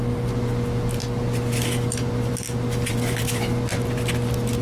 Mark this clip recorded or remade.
recorded